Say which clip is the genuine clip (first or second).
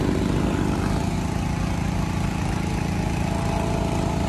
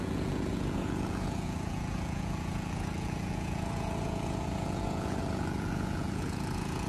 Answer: first